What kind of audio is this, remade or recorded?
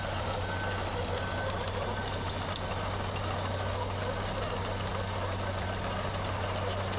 recorded